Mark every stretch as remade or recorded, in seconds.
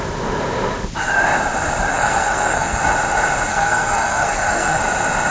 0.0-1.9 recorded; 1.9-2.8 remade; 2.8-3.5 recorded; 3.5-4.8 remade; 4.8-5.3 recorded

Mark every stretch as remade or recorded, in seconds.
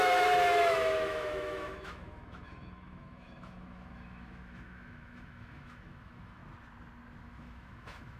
0.0-6.4 remade; 6.4-7.2 recorded; 7.2-8.2 remade